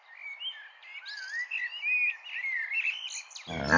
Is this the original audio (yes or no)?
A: yes